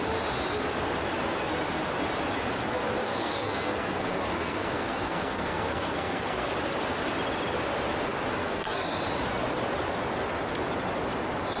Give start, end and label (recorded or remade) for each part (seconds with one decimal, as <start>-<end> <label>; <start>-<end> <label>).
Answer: 0.0-3.0 recorded; 3.0-6.5 remade; 6.5-8.4 recorded; 8.4-9.0 remade; 9.0-11.6 recorded

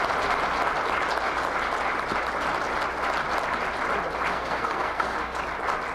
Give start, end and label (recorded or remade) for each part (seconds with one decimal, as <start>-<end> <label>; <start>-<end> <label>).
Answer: 0.0-4.3 recorded; 4.3-5.4 remade; 5.4-5.9 recorded